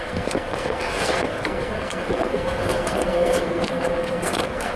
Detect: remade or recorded remade